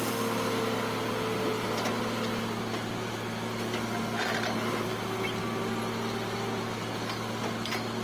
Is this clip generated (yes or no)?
no